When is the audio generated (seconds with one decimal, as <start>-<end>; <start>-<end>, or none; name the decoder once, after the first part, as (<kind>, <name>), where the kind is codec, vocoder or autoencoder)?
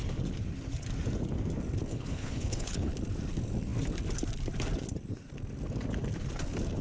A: 1.9-2.9 (codec, HILCodec)